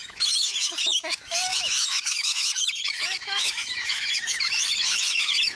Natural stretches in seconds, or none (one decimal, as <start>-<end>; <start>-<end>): none